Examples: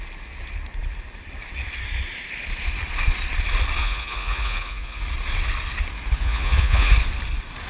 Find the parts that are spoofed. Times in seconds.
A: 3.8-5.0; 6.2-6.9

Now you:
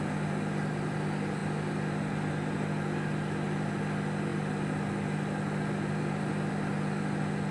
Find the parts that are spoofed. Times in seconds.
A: none